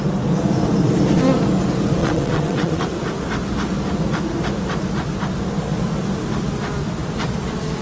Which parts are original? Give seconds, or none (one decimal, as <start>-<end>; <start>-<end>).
0.0-2.0; 2.8-7.8